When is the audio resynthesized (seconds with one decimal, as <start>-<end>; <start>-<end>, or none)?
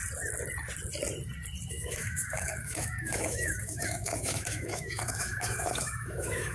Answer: 1.7-6.5